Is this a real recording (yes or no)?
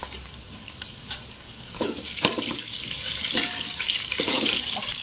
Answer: no